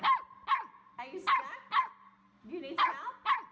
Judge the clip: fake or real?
real